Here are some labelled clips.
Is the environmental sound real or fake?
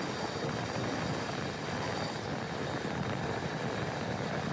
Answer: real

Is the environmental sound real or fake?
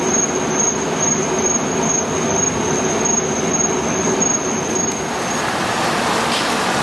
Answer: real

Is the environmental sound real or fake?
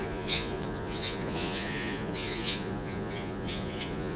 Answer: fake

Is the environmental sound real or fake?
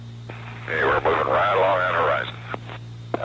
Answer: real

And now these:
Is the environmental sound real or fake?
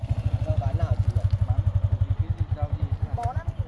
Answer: real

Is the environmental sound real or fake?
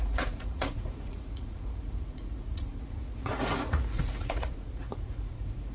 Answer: fake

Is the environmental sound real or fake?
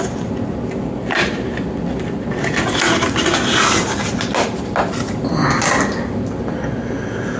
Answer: real